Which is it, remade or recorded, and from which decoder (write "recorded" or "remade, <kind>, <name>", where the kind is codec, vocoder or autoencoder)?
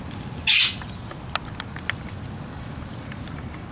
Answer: recorded